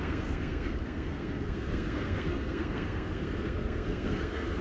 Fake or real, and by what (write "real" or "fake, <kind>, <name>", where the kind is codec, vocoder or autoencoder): fake, codec, SNAC